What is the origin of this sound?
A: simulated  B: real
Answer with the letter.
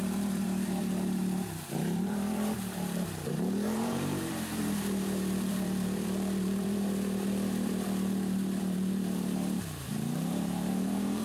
A